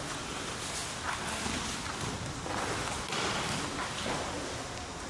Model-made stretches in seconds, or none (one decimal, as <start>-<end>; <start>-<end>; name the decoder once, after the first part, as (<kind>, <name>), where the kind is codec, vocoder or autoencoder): none

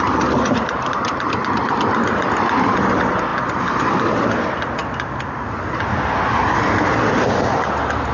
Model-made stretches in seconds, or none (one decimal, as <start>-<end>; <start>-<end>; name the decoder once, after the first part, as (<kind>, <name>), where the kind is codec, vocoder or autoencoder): none